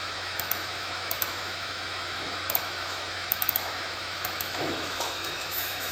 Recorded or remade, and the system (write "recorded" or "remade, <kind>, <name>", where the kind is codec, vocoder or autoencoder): remade, autoencoder, DAC-VAE